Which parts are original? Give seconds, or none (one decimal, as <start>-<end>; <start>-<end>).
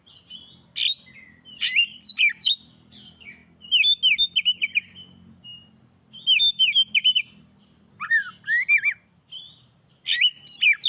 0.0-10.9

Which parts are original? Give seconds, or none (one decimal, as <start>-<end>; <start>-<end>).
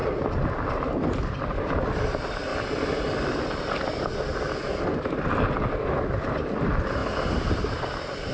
0.0-1.3; 2.5-6.1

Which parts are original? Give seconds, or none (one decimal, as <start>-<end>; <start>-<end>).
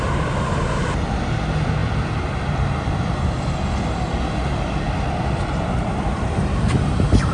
0.0-7.3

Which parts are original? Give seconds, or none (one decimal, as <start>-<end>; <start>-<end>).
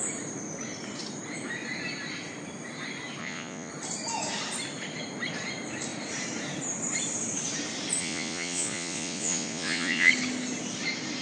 0.0-3.2; 3.7-8.0; 10.1-11.2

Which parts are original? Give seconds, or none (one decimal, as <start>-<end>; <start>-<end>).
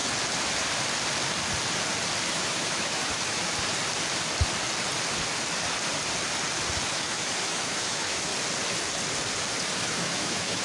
0.0-2.3; 3.4-6.9; 8.3-9.8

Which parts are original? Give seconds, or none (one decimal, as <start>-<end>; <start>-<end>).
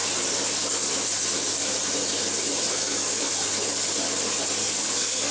0.0-2.7; 3.3-4.6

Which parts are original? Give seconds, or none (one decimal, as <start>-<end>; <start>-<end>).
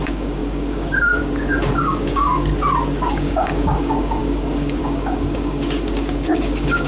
2.5-3.1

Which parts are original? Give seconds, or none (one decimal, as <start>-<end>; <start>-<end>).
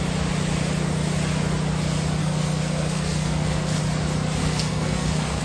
0.0-2.2; 3.8-4.4